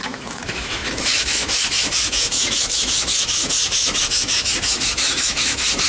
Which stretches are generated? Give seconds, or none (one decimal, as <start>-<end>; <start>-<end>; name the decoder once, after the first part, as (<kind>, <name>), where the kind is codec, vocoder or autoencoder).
0.0-5.9 (autoencoder, DAC-VAE)